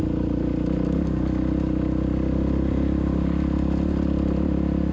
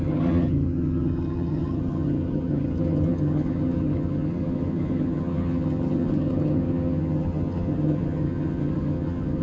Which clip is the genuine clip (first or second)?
first